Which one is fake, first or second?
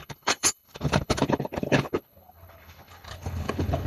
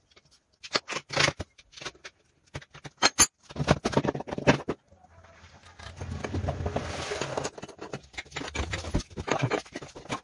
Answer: first